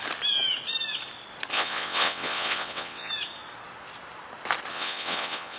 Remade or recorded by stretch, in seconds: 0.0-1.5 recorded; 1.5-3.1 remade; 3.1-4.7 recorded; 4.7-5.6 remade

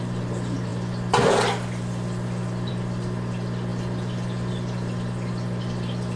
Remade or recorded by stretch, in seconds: 0.0-6.2 recorded

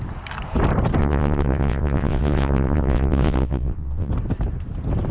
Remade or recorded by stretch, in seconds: 0.0-1.0 recorded; 1.0-4.1 remade; 4.1-5.1 recorded